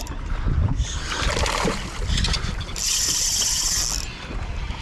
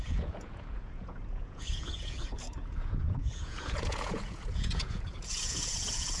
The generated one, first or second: second